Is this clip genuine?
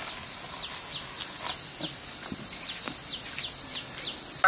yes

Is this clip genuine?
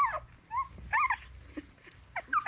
yes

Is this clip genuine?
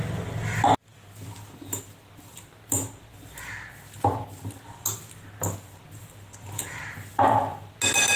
yes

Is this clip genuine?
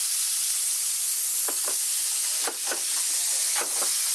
yes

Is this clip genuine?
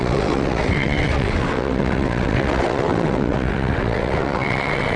no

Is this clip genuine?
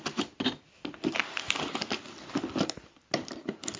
yes